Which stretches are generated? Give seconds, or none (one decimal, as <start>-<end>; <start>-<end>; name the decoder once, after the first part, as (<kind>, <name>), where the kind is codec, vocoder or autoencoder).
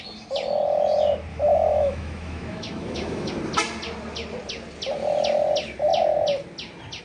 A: 1.3-3.3 (autoencoder, DAC-VAE)